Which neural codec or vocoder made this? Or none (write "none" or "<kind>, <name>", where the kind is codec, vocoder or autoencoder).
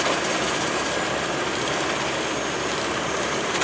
none